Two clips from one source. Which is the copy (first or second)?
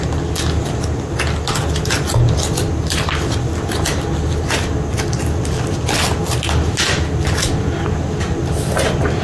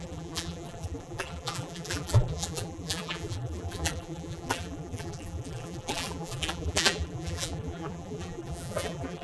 second